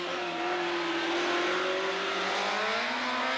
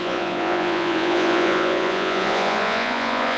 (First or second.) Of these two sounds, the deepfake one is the second